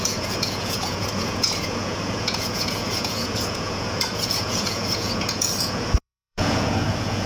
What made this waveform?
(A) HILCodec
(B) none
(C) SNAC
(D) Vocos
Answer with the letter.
D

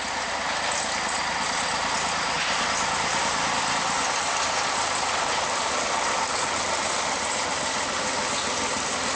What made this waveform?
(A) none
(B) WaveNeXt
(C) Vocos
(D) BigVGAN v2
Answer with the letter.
A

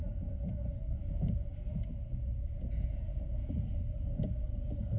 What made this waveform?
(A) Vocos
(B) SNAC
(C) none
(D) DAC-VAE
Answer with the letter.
A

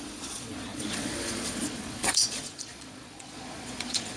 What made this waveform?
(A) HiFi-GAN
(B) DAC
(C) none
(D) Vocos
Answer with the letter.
D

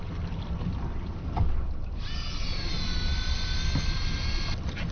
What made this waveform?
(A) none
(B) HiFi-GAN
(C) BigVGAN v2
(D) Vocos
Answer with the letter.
A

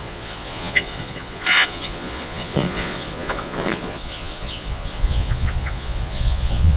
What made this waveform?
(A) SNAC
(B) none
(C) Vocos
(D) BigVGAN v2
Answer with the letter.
C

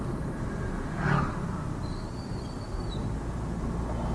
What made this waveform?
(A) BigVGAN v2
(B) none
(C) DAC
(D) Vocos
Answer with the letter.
B